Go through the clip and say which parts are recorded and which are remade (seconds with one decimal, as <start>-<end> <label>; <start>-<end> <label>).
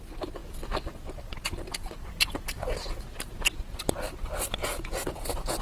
0.0-4.6 recorded; 4.6-5.6 remade